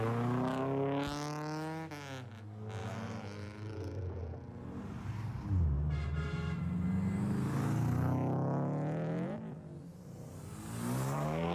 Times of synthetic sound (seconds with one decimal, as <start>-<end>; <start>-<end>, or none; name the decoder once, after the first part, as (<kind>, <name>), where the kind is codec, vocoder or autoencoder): 2.8-4.0 (vocoder, BigVGAN v2); 9.9-10.5